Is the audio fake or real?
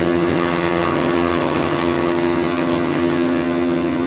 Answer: fake